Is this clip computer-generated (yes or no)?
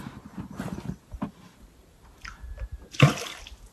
no